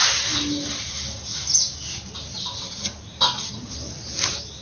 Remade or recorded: recorded